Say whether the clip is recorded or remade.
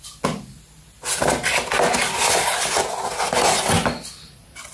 recorded